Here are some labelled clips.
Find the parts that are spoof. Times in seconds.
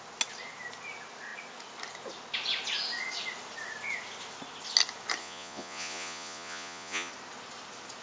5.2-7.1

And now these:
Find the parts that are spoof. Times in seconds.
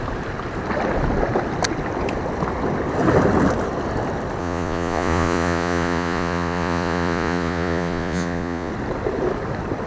4.4-8.7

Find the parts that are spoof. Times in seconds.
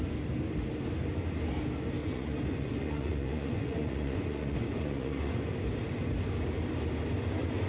2.0-5.5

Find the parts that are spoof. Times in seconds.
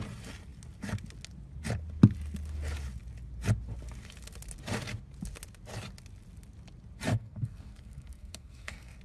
7.1-9.0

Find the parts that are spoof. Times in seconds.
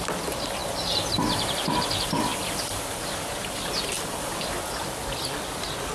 0.6-1.7; 2.3-4.5